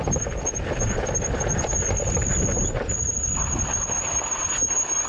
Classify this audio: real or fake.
real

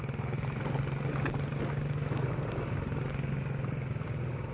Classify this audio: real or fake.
real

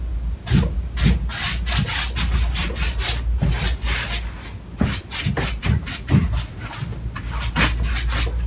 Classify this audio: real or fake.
real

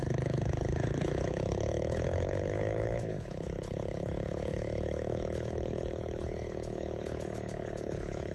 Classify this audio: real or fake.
fake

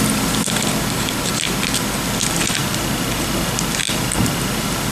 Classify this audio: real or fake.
real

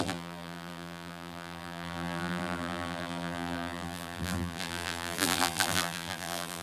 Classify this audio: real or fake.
fake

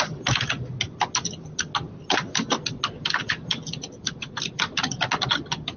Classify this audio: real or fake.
real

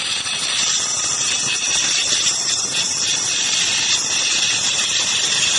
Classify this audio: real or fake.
fake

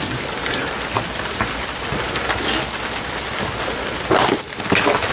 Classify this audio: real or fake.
real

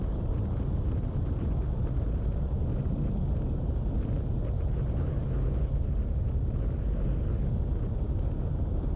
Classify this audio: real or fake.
real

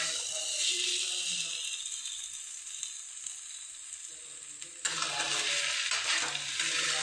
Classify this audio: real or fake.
real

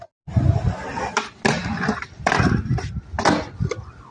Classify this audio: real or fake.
real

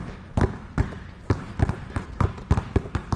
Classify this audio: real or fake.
real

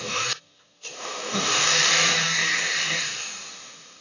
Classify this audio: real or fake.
fake